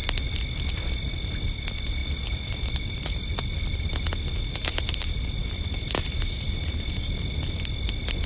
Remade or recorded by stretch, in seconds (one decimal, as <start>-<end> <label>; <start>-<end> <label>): 0.0-0.7 remade; 0.7-2.0 recorded; 2.0-3.9 remade; 3.9-8.3 recorded